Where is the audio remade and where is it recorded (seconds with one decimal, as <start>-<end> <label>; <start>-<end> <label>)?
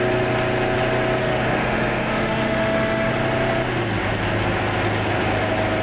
0.0-1.2 recorded; 1.2-3.1 remade; 3.1-5.8 recorded